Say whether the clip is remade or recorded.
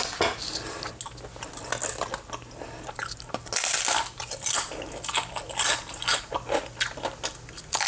recorded